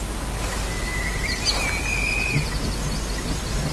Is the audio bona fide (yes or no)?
yes